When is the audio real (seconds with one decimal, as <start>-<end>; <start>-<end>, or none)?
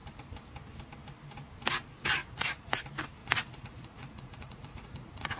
0.0-2.2; 2.8-3.2